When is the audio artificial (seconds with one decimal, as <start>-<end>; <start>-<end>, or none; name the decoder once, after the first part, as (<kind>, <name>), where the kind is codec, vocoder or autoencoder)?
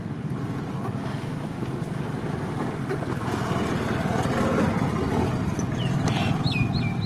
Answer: none